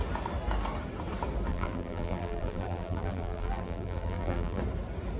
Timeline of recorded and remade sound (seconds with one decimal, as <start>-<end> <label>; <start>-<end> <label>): 0.0-1.5 recorded; 1.5-4.6 remade; 4.6-5.2 recorded